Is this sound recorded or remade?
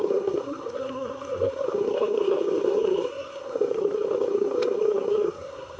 remade